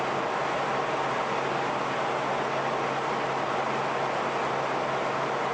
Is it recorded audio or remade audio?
recorded